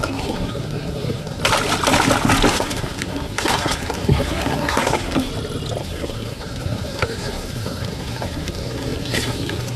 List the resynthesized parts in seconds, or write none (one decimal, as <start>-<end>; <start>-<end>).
0.0-1.4; 2.5-5.3; 5.8-9.8